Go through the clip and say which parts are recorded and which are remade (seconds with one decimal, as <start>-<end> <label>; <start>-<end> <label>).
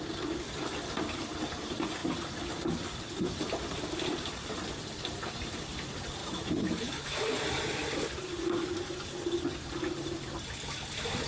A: 0.0-6.2 recorded; 6.2-7.2 remade; 7.2-11.3 recorded